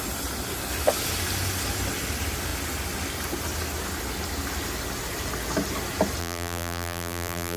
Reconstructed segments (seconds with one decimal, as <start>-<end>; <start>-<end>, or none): 6.2-7.6